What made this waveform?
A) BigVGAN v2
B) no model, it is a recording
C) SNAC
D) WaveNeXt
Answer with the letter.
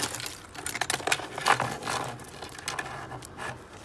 B